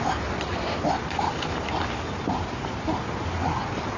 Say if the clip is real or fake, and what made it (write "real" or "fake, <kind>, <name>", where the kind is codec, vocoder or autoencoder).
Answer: real